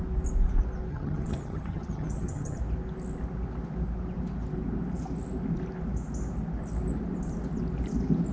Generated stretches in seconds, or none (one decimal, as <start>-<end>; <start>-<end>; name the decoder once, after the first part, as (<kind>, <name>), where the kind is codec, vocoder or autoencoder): 0.9-2.6 (vocoder, HiFi-GAN)